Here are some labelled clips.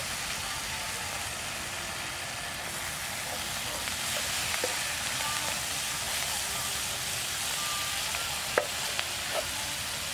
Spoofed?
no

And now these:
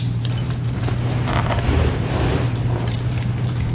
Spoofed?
yes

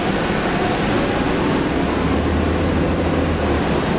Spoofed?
no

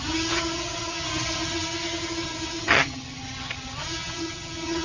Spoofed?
yes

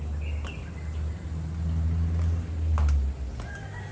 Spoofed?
no